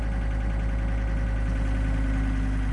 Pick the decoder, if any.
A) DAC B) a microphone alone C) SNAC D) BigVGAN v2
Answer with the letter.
B